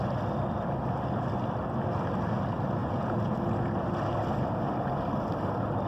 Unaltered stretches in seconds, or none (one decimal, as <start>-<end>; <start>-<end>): 0.0-2.8; 3.4-5.9